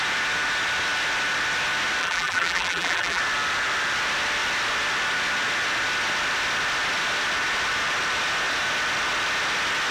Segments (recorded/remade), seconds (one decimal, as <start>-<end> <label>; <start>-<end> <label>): 0.0-2.0 recorded; 2.0-3.2 remade; 3.2-9.9 recorded